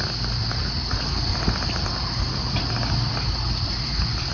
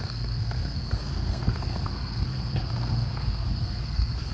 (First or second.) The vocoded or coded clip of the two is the second